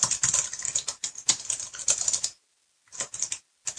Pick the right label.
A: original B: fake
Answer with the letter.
A